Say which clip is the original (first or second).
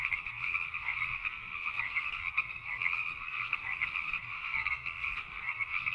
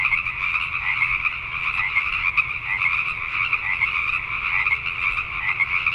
second